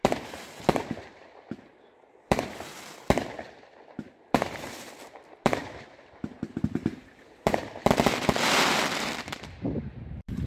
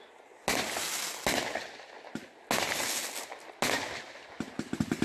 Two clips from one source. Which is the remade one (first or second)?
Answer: first